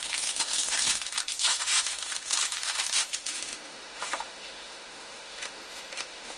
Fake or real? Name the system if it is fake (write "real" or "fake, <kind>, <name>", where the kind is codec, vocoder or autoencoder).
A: fake, autoencoder, DAC-VAE